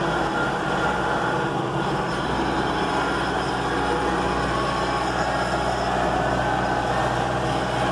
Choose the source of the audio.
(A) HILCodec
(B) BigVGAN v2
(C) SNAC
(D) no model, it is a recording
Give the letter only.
D